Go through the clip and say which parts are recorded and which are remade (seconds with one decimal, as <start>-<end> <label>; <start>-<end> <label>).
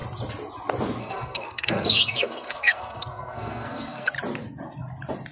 0.0-1.0 recorded; 1.0-4.1 remade; 4.1-5.3 recorded